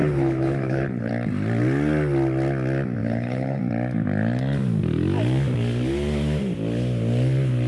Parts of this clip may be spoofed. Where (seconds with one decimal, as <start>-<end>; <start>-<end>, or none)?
0.0-1.1; 3.0-3.6

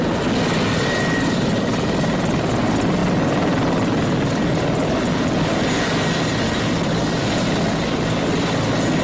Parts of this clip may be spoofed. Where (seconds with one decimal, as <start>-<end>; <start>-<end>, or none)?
none

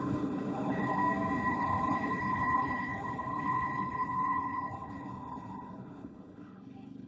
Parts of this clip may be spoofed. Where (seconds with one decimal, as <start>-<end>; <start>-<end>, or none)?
0.0-1.0; 1.5-7.1